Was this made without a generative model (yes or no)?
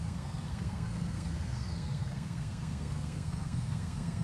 no